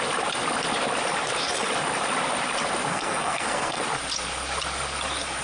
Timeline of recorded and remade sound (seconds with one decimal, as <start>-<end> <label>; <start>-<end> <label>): 0.0-2.9 recorded; 2.9-3.8 remade; 3.8-5.4 recorded